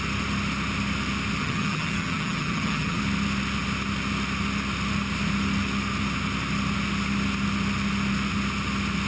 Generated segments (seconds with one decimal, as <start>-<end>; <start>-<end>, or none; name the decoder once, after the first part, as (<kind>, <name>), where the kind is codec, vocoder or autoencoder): 1.4-3.0 (vocoder, HiFi-GAN)